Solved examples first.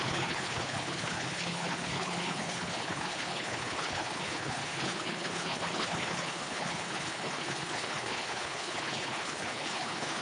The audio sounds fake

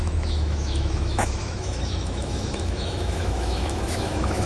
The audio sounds fake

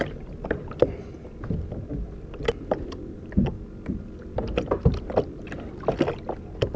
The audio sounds real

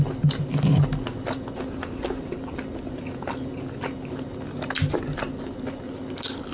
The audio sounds real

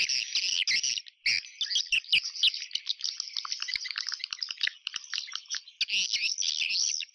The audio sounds real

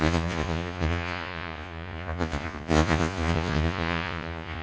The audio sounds fake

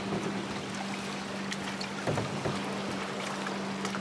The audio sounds real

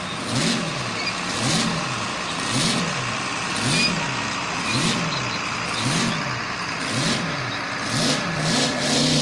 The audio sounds real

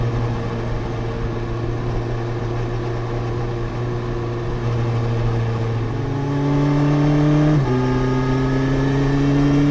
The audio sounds real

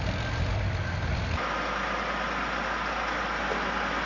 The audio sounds real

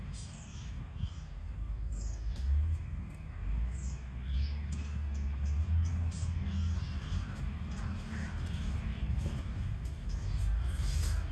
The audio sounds fake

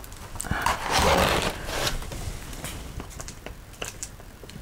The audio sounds fake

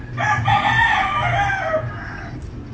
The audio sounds real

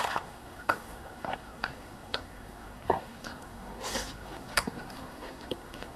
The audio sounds fake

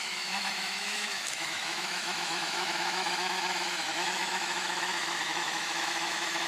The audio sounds fake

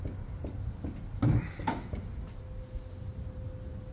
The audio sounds real